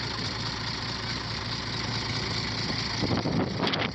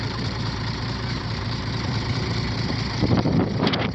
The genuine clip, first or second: first